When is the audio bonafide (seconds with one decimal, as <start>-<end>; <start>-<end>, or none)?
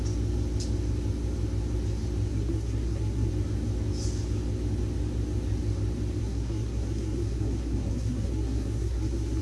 0.0-2.3; 3.3-6.2